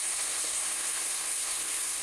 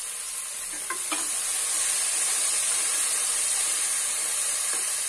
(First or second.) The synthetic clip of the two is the first